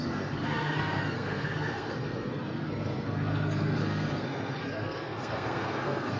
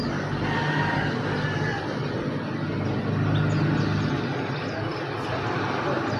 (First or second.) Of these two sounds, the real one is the second